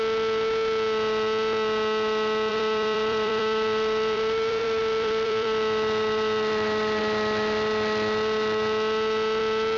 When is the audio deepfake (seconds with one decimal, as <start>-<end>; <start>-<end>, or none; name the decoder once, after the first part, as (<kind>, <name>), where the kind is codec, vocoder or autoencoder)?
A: 2.5-7.0 (vocoder, BigVGAN v2)